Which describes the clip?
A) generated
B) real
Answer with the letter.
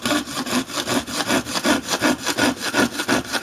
B